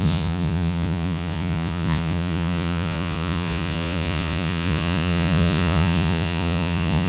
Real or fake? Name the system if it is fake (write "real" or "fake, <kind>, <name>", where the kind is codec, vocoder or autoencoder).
fake, vocoder, Vocos